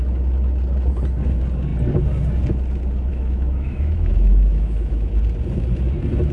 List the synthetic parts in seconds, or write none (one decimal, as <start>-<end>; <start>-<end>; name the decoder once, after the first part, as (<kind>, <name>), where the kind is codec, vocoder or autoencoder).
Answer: 3.1-5.1 (autoencoder, DAC-VAE)